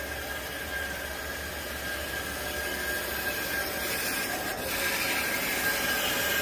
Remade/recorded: recorded